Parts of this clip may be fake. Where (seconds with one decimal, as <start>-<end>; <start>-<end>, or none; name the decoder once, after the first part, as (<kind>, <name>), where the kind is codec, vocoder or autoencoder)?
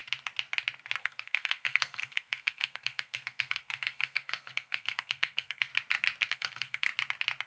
1.0-5.7 (codec, SNAC); 6.3-6.9